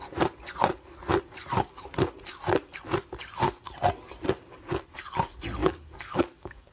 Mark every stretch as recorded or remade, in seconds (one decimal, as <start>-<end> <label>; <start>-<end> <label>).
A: 0.0-5.6 recorded; 5.6-6.7 remade